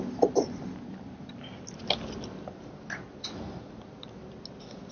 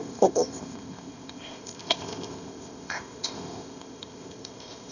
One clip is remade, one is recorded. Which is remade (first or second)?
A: second